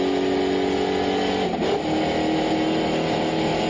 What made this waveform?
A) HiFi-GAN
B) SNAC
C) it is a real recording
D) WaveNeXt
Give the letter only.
C